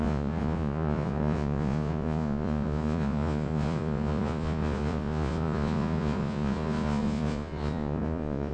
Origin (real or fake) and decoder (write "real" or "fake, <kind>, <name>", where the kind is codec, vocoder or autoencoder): fake, vocoder, Vocos